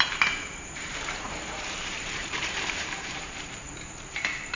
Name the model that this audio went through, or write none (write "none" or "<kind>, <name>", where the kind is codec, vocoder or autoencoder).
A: vocoder, BigVGAN v2